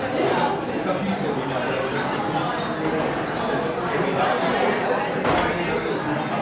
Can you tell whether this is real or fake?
real